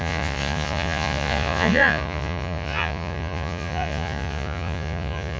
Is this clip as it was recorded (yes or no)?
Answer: no